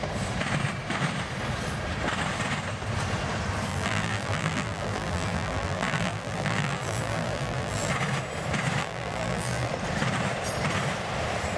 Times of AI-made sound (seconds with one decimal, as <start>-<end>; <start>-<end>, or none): 3.7-7.9; 8.8-9.7